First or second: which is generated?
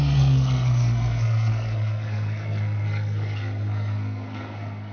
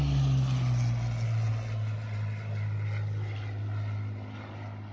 first